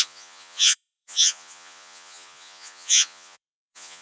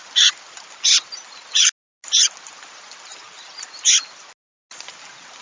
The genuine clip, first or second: second